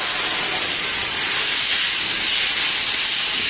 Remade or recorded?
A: recorded